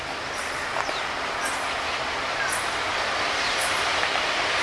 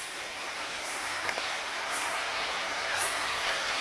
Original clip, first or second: first